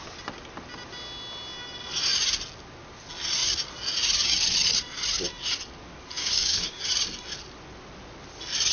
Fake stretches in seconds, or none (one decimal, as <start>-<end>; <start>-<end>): 6.2-6.8